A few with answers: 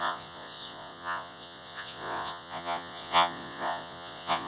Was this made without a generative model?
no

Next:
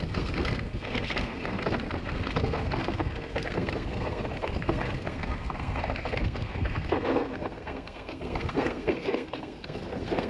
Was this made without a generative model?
no